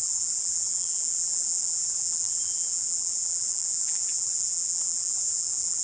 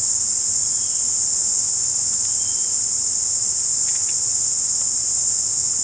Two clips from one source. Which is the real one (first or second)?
second